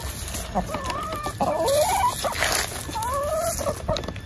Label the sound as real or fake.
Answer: real